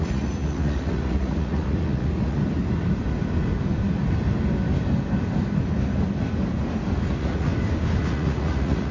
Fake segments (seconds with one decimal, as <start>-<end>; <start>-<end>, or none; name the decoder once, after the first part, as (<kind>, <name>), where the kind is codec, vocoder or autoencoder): 0.0-2.4 (vocoder, Vocos); 7.1-7.5; 8.0-8.9